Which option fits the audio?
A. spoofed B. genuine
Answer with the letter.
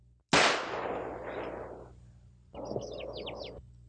B